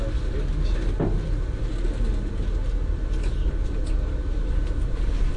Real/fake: real